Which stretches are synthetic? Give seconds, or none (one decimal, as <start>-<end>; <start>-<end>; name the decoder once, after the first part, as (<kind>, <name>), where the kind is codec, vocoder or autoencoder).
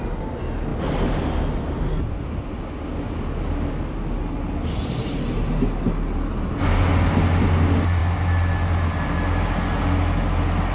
none